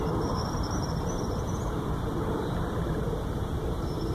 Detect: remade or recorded remade